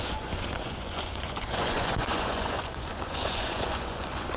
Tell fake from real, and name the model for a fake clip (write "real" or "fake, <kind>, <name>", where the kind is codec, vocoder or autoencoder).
fake, vocoder, Vocos